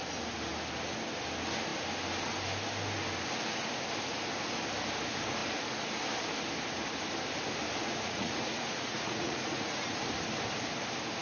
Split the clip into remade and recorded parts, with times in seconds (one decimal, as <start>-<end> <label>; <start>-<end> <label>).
0.0-7.8 recorded; 7.8-10.0 remade; 10.0-11.2 recorded